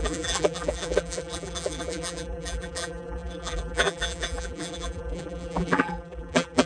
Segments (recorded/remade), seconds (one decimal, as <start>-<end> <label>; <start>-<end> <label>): 0.0-6.7 remade